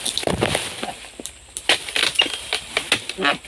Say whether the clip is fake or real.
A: real